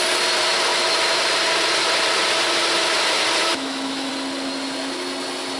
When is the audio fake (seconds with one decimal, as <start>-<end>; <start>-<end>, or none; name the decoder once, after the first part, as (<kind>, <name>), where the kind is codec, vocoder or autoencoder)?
3.4-4.1 (autoencoder, DAC-VAE)